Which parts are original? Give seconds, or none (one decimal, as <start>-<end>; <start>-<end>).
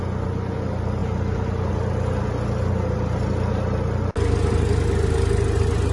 0.0-5.9